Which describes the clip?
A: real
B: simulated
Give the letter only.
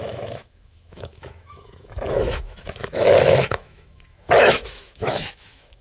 B